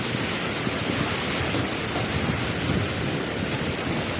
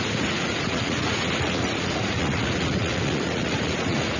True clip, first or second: first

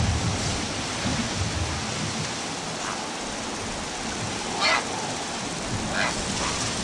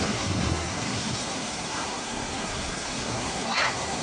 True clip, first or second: first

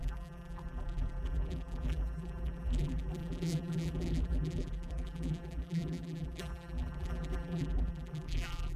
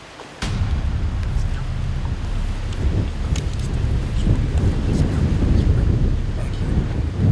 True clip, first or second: second